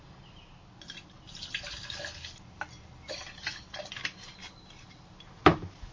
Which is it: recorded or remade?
recorded